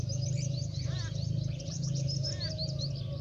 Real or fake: real